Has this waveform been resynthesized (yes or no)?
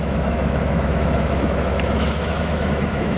yes